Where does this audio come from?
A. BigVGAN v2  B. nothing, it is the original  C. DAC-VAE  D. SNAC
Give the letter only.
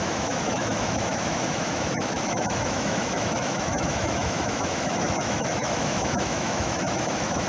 C